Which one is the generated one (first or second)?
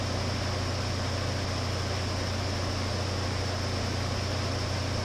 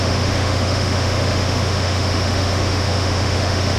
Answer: second